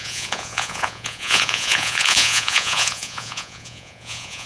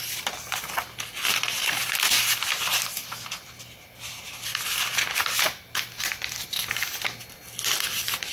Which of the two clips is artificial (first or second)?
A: first